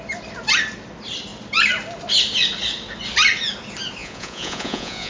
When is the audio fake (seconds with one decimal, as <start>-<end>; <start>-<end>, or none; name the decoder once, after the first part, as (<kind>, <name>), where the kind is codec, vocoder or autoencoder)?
4.0-5.1 (vocoder, Vocos)